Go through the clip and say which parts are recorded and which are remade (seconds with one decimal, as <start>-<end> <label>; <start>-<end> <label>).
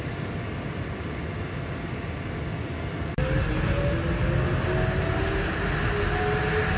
0.0-6.8 recorded